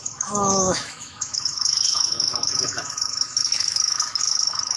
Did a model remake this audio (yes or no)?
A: yes